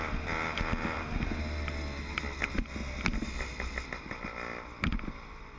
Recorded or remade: recorded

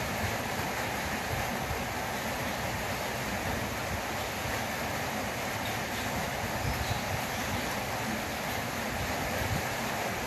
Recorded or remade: recorded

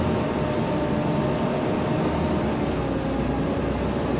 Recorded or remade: recorded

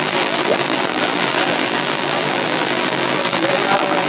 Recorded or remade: remade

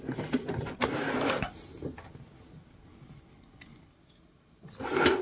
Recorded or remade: recorded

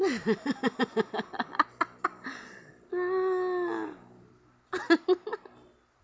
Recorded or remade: recorded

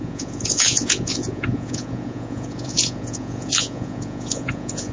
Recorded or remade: remade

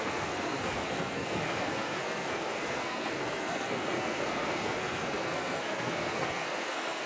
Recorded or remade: remade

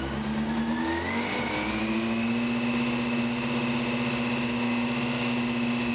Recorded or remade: recorded